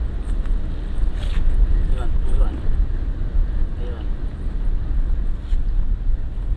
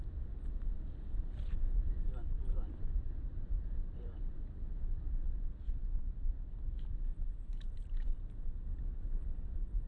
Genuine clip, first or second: first